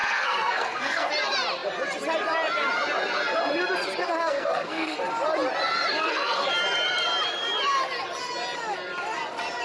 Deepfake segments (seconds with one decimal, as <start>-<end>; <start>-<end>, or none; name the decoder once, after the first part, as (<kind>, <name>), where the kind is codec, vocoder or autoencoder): 0.0-1.1 (codec, SNAC); 4.0-5.0; 6.0-6.5